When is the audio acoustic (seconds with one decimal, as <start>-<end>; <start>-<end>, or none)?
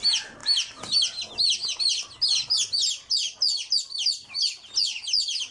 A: 0.0-5.5